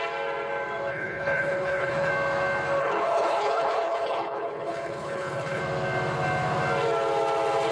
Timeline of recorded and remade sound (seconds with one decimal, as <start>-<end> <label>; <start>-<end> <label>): 0.0-0.9 recorded; 0.9-2.1 remade; 2.1-2.8 recorded; 2.8-5.6 remade; 5.6-7.7 recorded